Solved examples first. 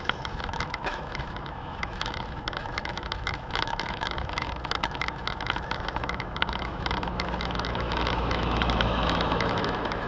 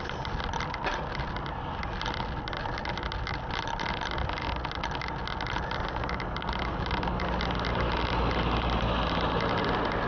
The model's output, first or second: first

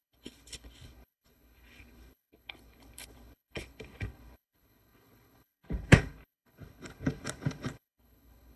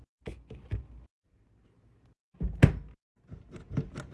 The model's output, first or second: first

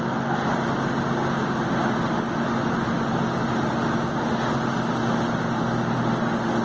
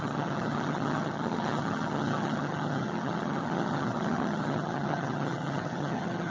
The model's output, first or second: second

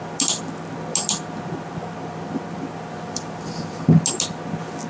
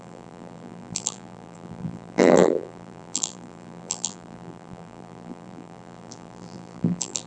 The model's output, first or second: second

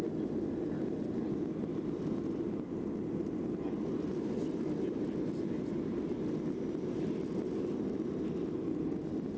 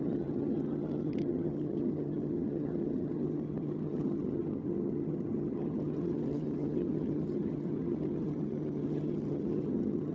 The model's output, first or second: second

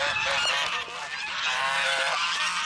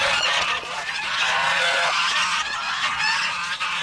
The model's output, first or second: second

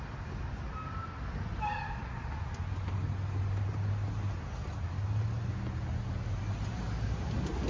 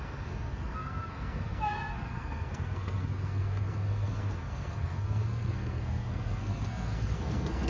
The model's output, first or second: second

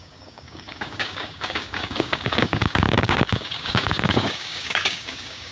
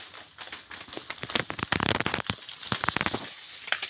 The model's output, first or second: first